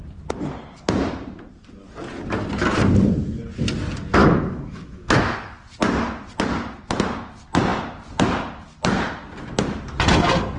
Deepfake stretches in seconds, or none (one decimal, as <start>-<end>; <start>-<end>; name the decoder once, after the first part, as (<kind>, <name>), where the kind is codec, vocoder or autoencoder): 4.2-5.2 (autoencoder, DAC-VAE)

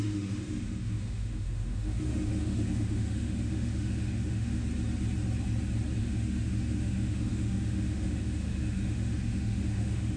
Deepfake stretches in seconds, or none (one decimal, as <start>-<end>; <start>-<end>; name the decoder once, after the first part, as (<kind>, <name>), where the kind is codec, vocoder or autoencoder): 0.0-4.6 (autoencoder, DAC-VAE); 6.0-10.2

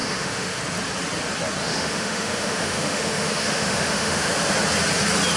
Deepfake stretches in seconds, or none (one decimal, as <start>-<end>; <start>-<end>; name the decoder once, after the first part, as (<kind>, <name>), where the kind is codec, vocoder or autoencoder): 0.0-0.6 (autoencoder, DAC-VAE); 1.6-4.3

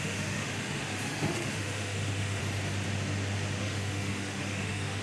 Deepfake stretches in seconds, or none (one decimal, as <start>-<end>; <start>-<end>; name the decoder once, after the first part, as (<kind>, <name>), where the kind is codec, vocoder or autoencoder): 0.0-2.4 (autoencoder, DAC-VAE); 3.6-5.0

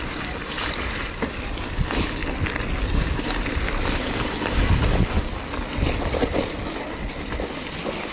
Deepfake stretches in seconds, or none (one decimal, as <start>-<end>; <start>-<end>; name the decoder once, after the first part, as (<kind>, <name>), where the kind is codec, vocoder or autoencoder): none

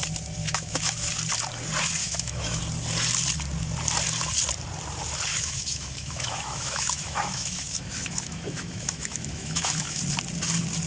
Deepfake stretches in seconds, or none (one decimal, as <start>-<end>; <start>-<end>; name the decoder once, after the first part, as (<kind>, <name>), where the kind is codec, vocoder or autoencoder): 0.4-1.1 (autoencoder, DAC-VAE); 2.0-2.6; 5.3-10.0

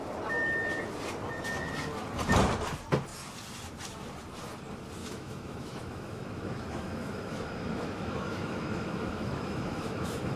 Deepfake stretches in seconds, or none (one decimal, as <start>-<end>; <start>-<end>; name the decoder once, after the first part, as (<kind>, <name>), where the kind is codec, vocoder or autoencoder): 5.0-10.4 (autoencoder, DAC-VAE)